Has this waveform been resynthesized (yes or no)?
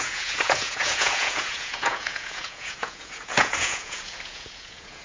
yes